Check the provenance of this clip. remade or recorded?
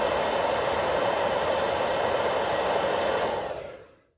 recorded